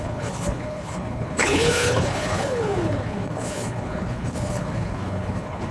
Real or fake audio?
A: fake